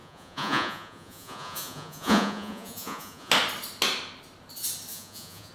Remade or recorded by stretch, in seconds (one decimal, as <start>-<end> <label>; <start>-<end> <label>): 0.0-3.3 remade; 3.3-4.9 recorded; 4.9-5.5 remade